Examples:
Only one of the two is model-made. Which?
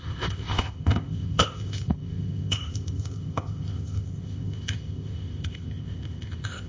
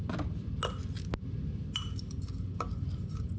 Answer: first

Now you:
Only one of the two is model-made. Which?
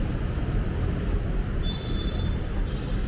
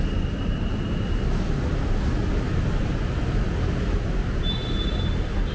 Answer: first